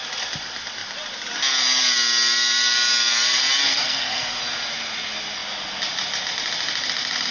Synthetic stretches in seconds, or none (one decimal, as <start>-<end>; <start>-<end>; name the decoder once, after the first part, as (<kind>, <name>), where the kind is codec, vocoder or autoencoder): 3.7-4.4 (codec, SNAC)